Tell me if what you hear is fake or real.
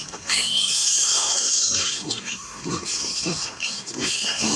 fake